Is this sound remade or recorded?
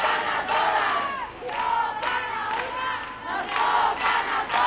recorded